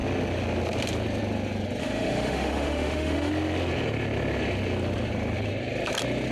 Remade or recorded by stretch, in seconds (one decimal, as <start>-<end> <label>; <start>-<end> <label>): 0.0-1.8 recorded; 1.8-3.3 remade; 3.3-6.3 recorded